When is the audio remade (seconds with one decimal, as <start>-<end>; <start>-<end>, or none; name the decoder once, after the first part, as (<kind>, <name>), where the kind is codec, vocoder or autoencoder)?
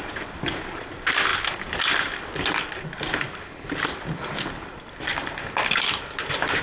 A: none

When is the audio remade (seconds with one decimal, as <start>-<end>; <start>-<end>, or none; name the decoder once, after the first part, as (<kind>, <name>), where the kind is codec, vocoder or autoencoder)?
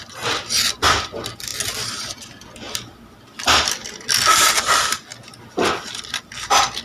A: none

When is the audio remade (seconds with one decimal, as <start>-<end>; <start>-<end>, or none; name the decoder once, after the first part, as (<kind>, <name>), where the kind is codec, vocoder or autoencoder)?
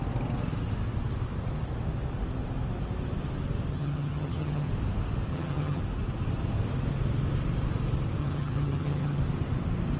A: 3.7-4.7 (vocoder, HiFi-GAN); 5.3-5.8; 8.2-9.2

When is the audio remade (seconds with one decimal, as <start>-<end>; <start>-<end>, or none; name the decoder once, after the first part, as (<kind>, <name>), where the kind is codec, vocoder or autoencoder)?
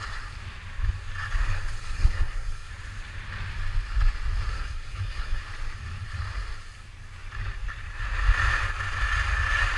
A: 1.8-2.7 (codec, SNAC); 4.5-5.4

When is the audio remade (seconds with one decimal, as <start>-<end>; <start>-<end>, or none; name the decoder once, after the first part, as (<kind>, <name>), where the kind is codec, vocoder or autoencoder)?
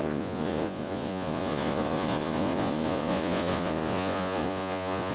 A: 0.0-5.1 (vocoder, Vocos)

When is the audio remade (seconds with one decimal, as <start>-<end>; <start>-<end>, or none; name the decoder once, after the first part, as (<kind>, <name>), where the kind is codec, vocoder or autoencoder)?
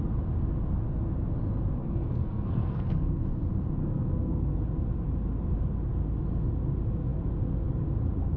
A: 1.8-3.2 (codec, SNAC); 3.8-4.6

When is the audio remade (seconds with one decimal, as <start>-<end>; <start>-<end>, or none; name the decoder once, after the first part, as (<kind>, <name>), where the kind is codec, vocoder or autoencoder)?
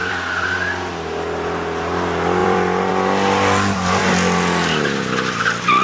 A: 0.0-0.5 (vocoder, BigVGAN v2); 2.4-2.9